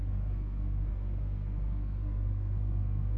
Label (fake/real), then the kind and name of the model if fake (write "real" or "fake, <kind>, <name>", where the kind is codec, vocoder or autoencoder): fake, codec, SNAC